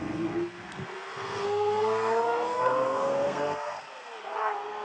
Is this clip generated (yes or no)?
yes